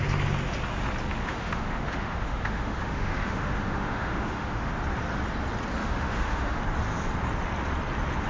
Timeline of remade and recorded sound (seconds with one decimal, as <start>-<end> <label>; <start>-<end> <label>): 0.0-1.2 recorded; 1.2-4.7 remade; 4.7-5.8 recorded; 5.8-6.6 remade; 6.6-8.3 recorded